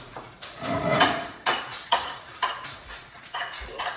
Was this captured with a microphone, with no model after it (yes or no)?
no